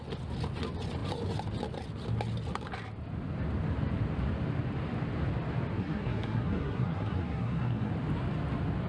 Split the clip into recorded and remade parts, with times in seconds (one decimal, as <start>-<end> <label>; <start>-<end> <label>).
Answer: 0.0-5.8 recorded; 5.8-7.9 remade; 7.9-8.9 recorded